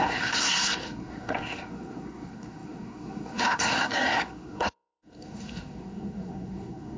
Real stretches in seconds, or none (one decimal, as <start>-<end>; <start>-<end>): none